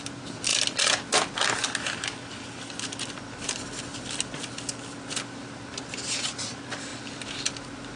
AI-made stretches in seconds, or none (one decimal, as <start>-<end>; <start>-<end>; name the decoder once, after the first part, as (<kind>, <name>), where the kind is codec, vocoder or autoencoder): none